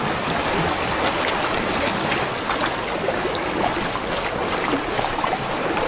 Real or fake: real